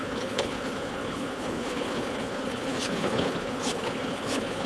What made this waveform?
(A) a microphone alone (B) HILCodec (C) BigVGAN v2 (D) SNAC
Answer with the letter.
B